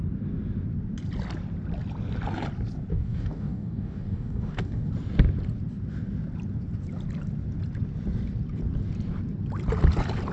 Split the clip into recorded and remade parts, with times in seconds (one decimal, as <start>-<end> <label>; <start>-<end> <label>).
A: 0.0-2.9 recorded; 2.9-4.9 remade; 4.9-10.3 recorded